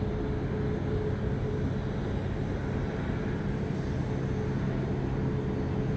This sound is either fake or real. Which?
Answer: real